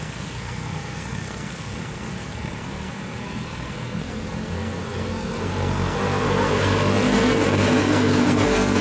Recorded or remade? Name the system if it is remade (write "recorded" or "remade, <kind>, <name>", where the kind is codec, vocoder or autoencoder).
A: remade, codec, SNAC